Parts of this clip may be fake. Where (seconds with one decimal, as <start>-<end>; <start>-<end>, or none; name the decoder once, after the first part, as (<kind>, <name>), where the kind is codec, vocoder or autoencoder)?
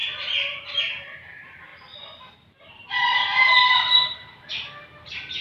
1.7-4.5 (vocoder, BigVGAN v2)